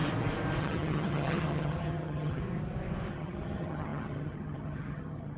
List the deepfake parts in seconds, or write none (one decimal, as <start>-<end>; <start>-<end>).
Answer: 0.6-2.4; 3.1-5.4